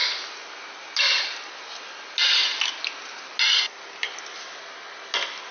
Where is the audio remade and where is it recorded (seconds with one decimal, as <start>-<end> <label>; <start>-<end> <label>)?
0.0-5.5 recorded